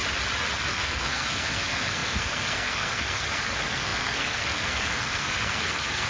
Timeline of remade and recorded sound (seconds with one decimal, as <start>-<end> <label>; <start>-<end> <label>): 0.0-0.6 recorded; 0.6-6.1 remade

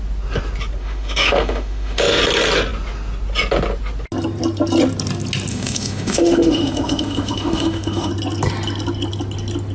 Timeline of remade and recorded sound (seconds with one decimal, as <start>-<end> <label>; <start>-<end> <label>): 0.0-0.8 recorded; 0.8-2.2 remade; 2.2-5.5 recorded; 5.5-8.1 remade; 8.1-9.7 recorded

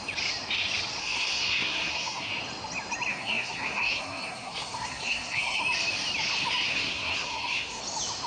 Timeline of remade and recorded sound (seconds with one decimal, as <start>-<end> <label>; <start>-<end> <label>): 0.0-1.0 recorded; 1.0-2.3 remade; 2.3-3.1 recorded; 3.1-5.6 remade; 5.6-6.7 recorded; 6.7-7.8 remade; 7.8-8.3 recorded

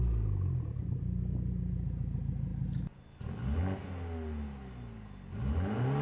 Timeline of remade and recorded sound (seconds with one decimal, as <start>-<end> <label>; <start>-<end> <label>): 0.0-6.0 recorded

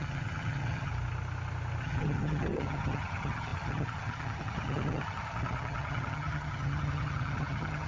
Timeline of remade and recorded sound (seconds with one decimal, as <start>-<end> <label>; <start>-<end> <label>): 0.0-0.9 remade; 0.9-1.8 recorded; 1.8-7.9 remade

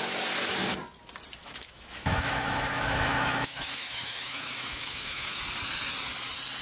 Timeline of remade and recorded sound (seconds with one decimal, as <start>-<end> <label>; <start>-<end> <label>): 0.0-1.4 recorded; 1.4-5.4 remade; 5.4-6.6 recorded